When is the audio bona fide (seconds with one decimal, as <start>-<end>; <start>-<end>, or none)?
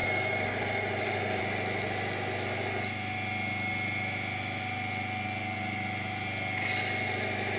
1.4-7.6